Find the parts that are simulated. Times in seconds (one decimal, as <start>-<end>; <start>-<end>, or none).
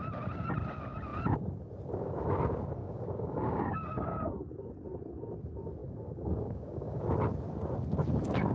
2.8-4.5; 5.8-7.0